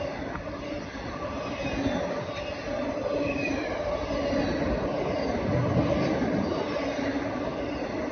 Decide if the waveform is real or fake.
real